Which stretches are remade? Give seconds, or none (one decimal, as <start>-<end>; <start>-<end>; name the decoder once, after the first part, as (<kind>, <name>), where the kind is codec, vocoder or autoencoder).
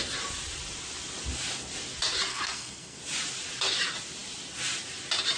2.3-3.0 (codec, SNAC)